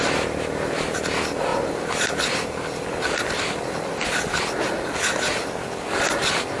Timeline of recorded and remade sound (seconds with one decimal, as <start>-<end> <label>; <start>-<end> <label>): 0.0-6.6 recorded